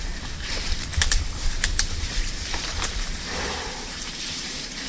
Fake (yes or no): yes